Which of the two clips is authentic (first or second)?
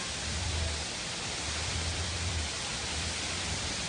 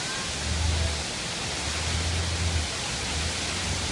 second